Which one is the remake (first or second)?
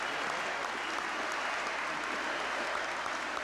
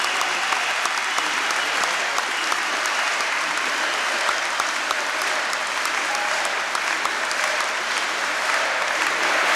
second